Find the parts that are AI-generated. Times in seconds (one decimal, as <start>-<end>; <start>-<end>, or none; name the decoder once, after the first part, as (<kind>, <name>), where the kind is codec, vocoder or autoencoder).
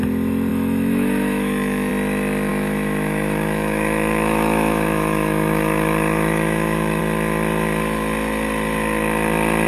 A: 0.5-1.9 (autoencoder, DAC-VAE); 2.5-7.0